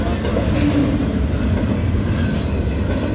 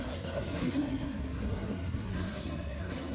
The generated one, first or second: second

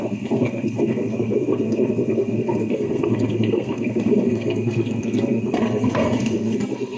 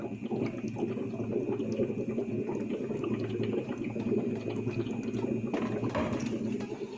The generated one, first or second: first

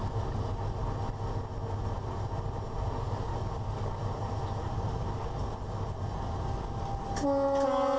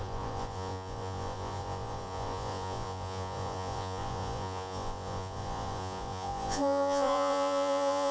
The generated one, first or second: second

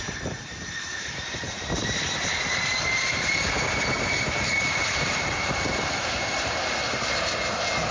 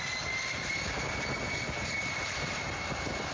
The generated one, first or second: first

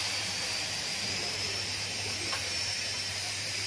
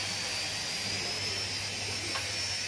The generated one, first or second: first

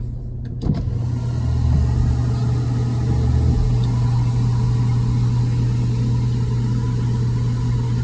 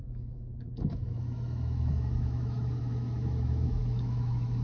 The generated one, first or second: second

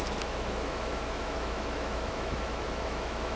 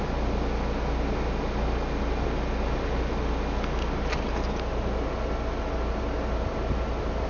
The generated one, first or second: first